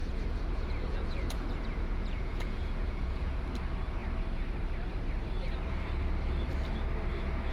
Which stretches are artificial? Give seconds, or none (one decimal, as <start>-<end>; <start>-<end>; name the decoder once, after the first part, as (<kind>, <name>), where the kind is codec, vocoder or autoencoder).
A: 0.0-3.4 (vocoder, Vocos)